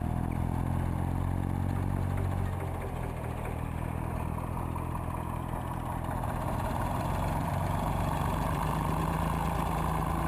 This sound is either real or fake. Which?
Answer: real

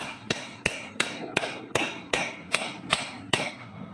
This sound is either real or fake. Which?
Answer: fake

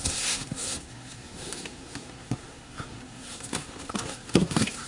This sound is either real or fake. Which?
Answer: fake